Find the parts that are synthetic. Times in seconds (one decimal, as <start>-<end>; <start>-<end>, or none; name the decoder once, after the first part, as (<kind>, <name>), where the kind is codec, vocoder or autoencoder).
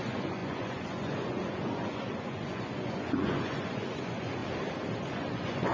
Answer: 0.0-4.4 (vocoder, Vocos); 5.0-5.7